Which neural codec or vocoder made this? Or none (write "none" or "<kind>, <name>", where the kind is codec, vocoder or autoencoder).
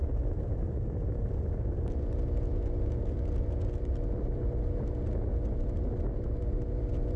none